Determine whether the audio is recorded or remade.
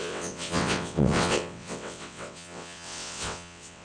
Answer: remade